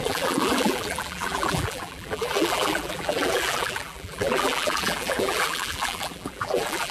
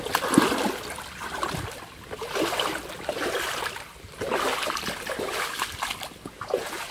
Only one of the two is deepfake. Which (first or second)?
first